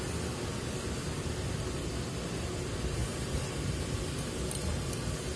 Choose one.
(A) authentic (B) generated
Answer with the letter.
A